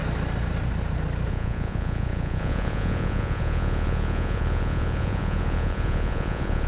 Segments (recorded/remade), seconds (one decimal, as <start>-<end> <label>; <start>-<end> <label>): 0.0-1.3 recorded; 1.3-6.7 remade

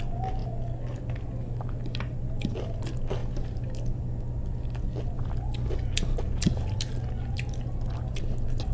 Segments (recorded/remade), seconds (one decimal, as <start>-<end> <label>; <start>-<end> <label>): 0.0-8.7 recorded

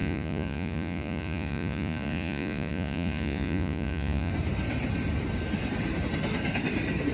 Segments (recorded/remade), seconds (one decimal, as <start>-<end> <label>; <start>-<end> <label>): 0.0-4.3 remade; 4.3-7.1 recorded

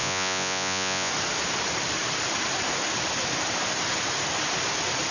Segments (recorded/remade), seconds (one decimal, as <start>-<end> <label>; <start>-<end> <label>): 0.0-1.1 remade; 1.1-5.1 recorded